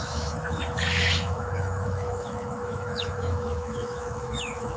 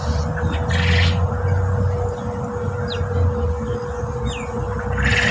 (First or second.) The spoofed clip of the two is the first